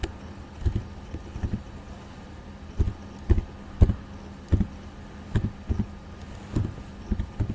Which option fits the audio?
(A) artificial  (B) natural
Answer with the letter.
B